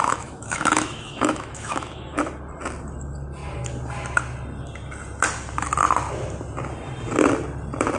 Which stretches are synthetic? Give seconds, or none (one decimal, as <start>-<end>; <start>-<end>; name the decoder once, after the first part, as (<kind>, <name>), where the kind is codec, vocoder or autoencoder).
0.0-2.2 (autoencoder, DAC-VAE)